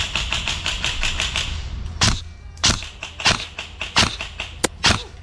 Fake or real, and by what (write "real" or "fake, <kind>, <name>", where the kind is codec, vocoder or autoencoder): real